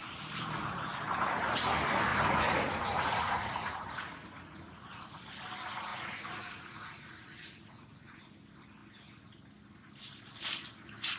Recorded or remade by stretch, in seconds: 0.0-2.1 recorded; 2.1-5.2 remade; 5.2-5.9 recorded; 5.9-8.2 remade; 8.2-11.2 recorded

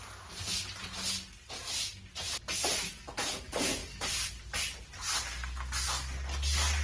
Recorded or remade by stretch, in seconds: 0.0-3.8 recorded; 3.8-5.2 remade; 5.2-6.8 recorded

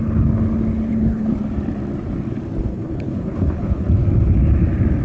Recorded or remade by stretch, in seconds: 0.0-0.9 recorded; 0.9-1.4 remade; 1.4-2.7 recorded; 2.7-3.8 remade; 3.8-5.0 recorded

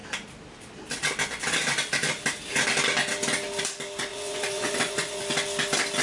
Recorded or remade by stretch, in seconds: 0.0-4.1 recorded; 4.1-5.2 remade; 5.2-6.0 recorded